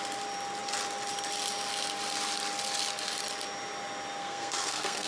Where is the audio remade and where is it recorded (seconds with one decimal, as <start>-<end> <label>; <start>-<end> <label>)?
0.0-4.2 recorded; 4.2-5.1 remade

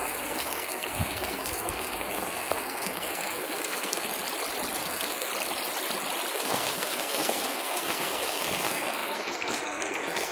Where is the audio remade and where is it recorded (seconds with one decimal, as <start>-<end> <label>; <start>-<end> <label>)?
0.0-4.1 remade; 4.1-4.8 recorded; 4.8-5.3 remade; 5.3-6.3 recorded; 6.3-10.3 remade